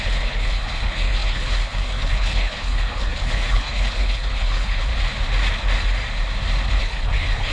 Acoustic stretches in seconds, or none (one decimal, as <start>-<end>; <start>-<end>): 4.9-6.8